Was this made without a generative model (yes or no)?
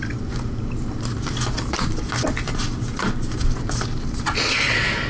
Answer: yes